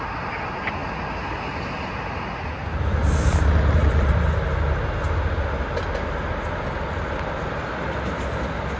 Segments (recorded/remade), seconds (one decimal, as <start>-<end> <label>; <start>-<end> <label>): 0.0-3.8 recorded; 3.8-4.3 remade; 4.3-8.8 recorded